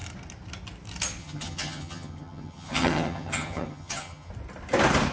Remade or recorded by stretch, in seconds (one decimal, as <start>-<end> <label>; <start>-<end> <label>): 0.0-1.2 recorded; 1.2-4.3 remade; 4.3-5.1 recorded